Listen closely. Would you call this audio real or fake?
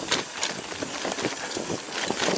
real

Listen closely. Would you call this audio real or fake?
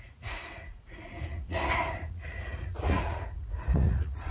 fake